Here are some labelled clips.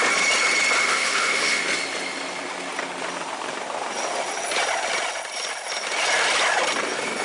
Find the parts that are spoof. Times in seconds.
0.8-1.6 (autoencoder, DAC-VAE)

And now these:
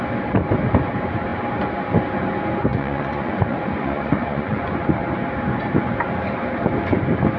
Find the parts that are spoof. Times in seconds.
2.7-4.7 (vocoder, Vocos)